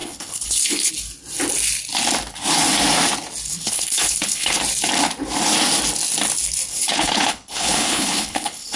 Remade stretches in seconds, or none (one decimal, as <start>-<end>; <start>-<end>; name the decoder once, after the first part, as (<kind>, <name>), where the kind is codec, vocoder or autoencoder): 0.0-0.9 (codec, HILCodec); 3.5-4.6; 6.7-8.8